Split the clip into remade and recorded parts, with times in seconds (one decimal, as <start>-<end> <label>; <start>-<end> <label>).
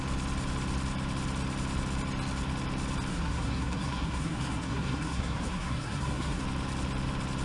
0.0-3.1 recorded; 3.1-6.4 remade; 6.4-7.4 recorded